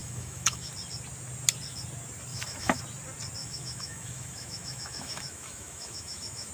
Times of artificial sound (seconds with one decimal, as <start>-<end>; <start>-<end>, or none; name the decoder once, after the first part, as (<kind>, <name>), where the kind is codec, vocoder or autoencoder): 0.0-0.7 (autoencoder, DAC-VAE); 2.3-2.8; 3.4-6.5